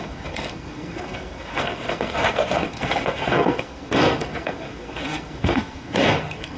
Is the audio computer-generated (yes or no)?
yes